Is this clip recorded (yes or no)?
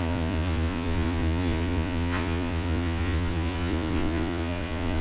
no